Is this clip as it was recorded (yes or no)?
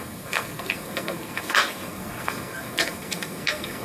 no